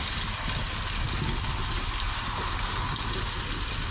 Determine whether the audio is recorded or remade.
recorded